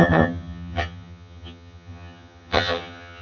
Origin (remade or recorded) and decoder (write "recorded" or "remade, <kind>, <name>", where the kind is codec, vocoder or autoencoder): remade, vocoder, HiFi-GAN